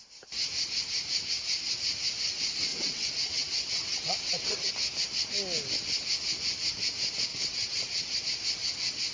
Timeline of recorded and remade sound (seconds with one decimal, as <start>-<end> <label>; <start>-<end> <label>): 0.0-2.7 recorded; 2.7-4.7 remade; 4.7-7.3 recorded; 7.3-8.2 remade; 8.2-9.1 recorded